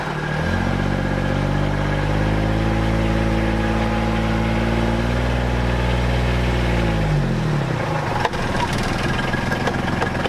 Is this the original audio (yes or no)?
yes